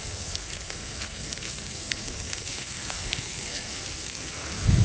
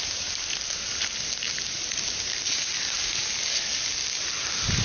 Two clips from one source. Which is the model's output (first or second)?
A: first